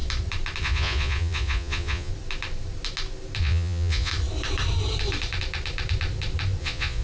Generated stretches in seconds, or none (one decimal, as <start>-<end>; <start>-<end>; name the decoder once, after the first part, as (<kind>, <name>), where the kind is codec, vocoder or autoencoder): 0.6-2.1 (vocoder, Vocos); 3.4-4.1; 6.6-7.0